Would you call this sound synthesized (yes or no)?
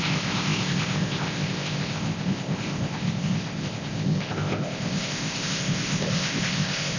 yes